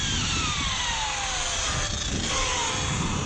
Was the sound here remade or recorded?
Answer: recorded